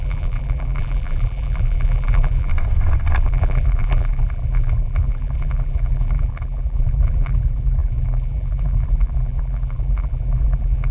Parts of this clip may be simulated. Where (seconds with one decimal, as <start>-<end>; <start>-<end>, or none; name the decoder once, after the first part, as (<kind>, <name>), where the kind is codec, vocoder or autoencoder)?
0.0-2.5 (vocoder, BigVGAN v2); 3.2-10.9